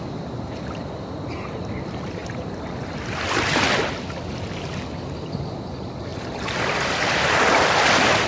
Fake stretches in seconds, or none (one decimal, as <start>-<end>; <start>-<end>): 6.1-8.3